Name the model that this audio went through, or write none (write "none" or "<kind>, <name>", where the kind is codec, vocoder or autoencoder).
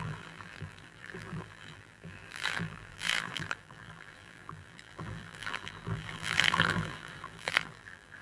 vocoder, BigVGAN v2